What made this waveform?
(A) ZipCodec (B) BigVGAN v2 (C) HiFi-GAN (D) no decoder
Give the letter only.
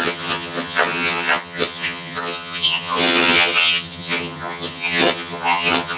C